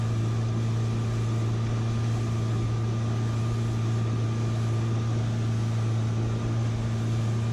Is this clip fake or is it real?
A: real